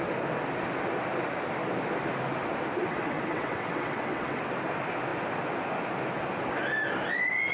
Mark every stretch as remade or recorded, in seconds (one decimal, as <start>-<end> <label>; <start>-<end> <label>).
0.0-2.9 recorded; 2.9-4.4 remade; 4.4-7.5 recorded